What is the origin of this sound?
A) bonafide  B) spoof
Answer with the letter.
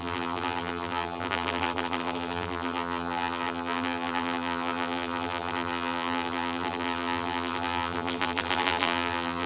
B